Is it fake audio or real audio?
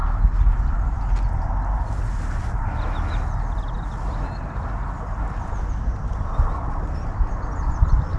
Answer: real